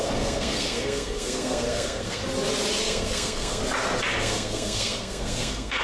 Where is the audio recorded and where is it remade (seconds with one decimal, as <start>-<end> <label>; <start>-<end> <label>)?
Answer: 0.0-2.2 remade; 2.2-2.8 recorded; 2.8-3.6 remade; 3.6-4.2 recorded; 4.2-5.8 remade